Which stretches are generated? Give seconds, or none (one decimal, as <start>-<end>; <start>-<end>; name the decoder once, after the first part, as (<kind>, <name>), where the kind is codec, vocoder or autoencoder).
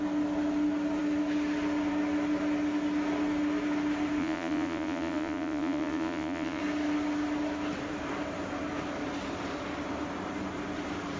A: 4.2-6.6 (vocoder, Vocos)